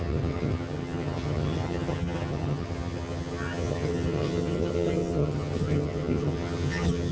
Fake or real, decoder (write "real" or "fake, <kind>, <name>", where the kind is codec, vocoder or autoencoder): fake, vocoder, HiFi-GAN